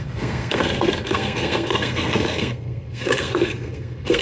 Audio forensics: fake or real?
fake